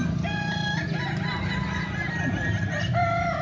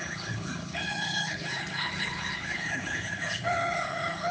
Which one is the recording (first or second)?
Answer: first